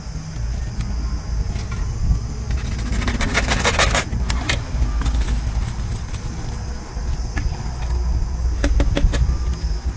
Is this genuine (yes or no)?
yes